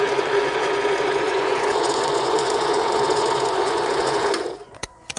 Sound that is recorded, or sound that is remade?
remade